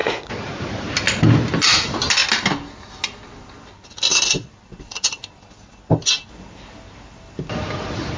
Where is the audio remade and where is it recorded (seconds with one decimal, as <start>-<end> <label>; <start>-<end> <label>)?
0.0-0.6 remade; 0.6-8.2 recorded